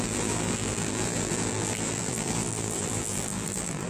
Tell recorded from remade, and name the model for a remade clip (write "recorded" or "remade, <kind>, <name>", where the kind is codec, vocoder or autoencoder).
remade, vocoder, BigVGAN v2